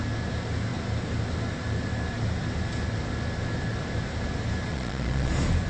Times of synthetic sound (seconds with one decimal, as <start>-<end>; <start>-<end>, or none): 4.7-5.3